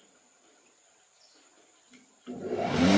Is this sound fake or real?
real